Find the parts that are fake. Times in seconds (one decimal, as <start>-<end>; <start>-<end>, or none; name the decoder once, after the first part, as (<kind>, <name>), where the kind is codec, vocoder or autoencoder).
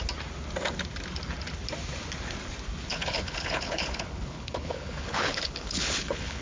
2.9-6.4 (codec, HILCodec)